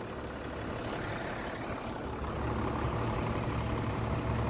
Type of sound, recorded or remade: recorded